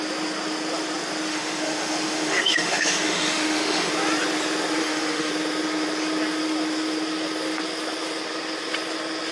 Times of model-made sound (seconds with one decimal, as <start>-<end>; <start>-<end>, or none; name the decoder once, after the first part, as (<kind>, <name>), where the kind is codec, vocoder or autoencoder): 1.3-3.9 (autoencoder, DAC-VAE); 4.8-5.3